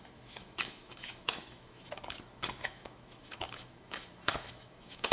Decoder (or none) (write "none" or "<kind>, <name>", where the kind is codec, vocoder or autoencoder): autoencoder, DAC-VAE